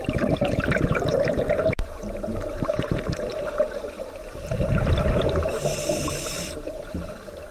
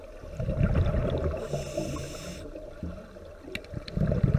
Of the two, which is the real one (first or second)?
second